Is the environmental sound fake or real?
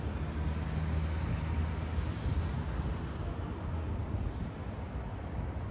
real